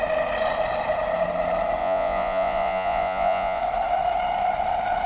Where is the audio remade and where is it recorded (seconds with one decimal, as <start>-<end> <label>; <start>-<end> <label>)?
0.0-1.8 recorded; 1.8-3.6 remade; 3.6-5.1 recorded